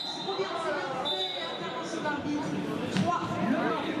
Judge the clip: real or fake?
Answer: real